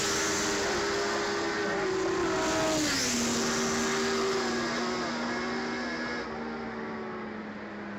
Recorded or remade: recorded